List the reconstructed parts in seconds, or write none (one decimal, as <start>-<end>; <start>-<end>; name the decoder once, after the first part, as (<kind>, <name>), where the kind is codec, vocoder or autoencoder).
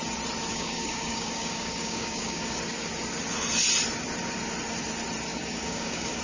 0.5-2.6 (codec, DAC); 5.3-6.2